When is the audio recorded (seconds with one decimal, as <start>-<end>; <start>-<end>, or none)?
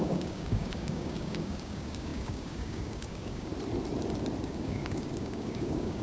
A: 3.5-4.4